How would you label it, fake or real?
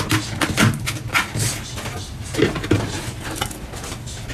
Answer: real